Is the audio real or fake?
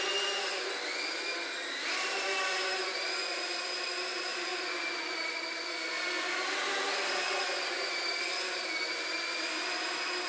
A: real